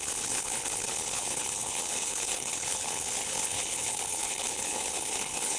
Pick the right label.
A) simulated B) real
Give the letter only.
A